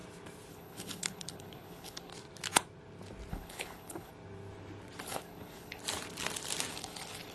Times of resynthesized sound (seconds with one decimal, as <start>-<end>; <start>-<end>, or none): 0.5-2.1; 3.3-4.1; 5.0-5.8; 6.7-7.3